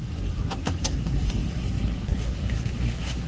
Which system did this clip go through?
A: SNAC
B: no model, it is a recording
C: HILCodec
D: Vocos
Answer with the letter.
A